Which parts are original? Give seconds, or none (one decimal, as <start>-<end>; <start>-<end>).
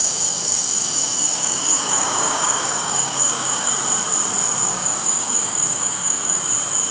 3.7-4.7; 6.4-6.9